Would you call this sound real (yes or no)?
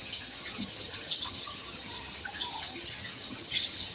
no